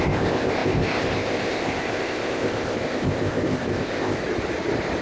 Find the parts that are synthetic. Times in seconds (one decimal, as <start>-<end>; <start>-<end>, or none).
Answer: 0.0-4.2